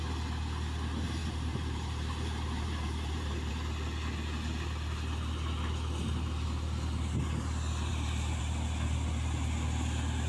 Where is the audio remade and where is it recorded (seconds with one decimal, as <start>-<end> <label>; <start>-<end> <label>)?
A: 0.0-1.2 recorded; 1.2-3.5 remade; 3.5-7.9 recorded; 7.9-8.4 remade; 8.4-10.3 recorded